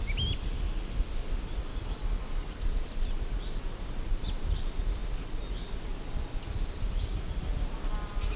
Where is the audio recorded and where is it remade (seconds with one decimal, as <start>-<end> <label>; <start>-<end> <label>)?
0.0-1.7 recorded; 1.7-2.3 remade; 2.3-8.4 recorded